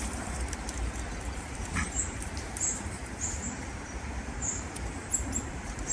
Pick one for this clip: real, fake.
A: fake